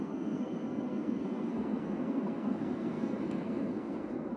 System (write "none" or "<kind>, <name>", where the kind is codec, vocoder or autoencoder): codec, SNAC